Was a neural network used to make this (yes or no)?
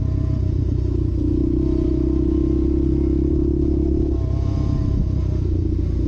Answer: no